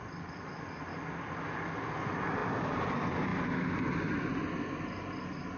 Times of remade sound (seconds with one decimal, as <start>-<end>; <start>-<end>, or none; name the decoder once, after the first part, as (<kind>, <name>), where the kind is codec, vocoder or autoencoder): none